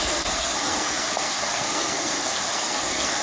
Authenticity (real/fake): fake